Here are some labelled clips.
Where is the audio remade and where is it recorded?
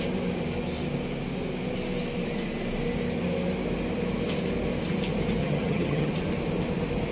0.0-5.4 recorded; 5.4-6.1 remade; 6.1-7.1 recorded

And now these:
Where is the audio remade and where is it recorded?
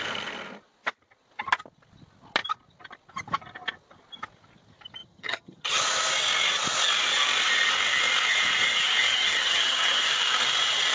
0.0-5.0 recorded; 5.0-5.8 remade; 5.8-9.1 recorded; 9.1-10.1 remade; 10.1-10.9 recorded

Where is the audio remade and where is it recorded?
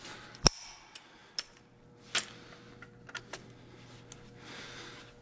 0.0-5.2 recorded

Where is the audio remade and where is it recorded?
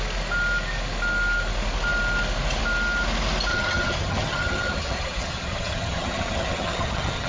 0.0-3.5 recorded; 3.5-7.3 remade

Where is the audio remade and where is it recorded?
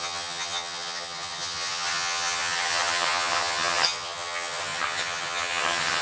0.0-6.0 remade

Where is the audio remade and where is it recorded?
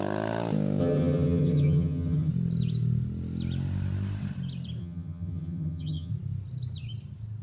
0.0-0.8 recorded; 0.8-2.3 remade; 2.3-4.8 recorded; 4.8-6.1 remade; 6.1-7.4 recorded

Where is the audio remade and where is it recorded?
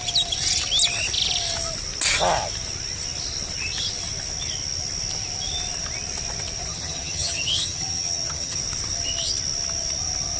0.0-6.7 recorded; 6.7-8.6 remade; 8.6-10.4 recorded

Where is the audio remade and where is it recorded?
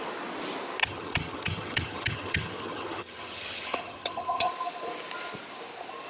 0.0-0.8 recorded; 0.8-4.5 remade; 4.5-6.1 recorded